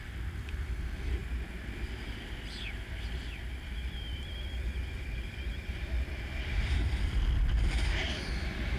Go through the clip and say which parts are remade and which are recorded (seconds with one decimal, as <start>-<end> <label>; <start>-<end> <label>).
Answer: 0.0-8.8 recorded